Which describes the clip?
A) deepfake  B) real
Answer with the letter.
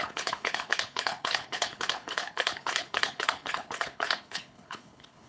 A